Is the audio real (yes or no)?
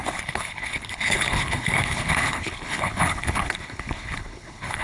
no